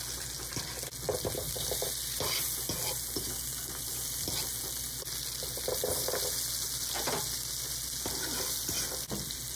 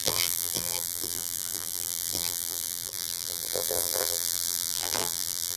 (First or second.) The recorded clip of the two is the first